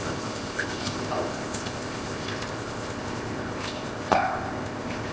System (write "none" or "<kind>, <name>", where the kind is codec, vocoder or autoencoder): codec, ZipCodec